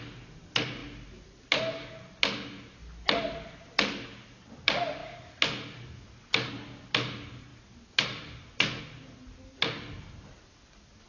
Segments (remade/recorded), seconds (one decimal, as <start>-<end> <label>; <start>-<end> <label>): 0.0-11.1 recorded